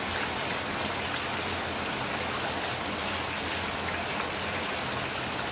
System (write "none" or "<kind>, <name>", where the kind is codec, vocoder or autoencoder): none